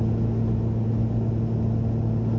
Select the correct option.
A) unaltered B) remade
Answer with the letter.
A